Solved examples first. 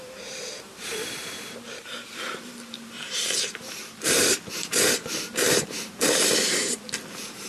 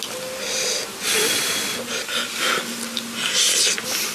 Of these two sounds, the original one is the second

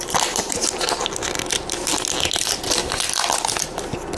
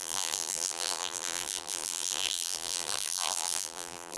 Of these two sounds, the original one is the first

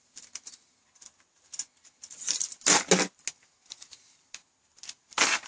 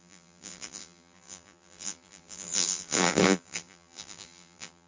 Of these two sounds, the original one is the first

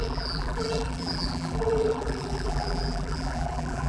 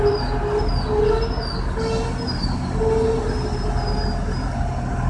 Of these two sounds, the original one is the second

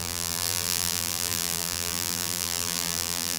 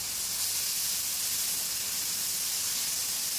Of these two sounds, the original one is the second